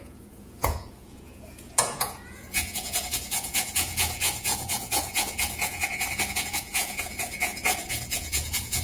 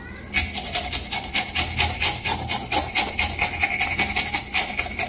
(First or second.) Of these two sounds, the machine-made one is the first